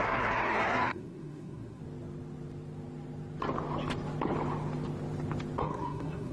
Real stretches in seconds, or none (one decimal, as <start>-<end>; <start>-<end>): 1.8-5.6